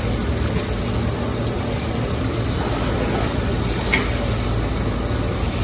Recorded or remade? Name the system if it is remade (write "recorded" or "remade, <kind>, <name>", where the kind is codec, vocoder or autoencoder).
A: recorded